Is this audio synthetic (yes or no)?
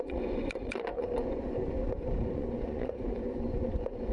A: yes